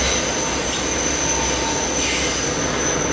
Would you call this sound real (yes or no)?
yes